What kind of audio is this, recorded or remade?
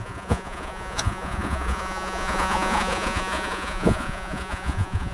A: remade